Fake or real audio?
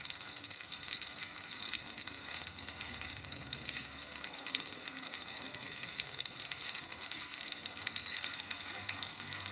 fake